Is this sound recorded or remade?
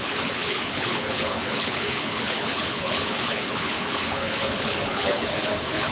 remade